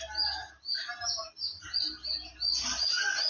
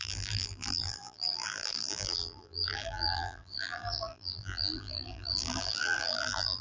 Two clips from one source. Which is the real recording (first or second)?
first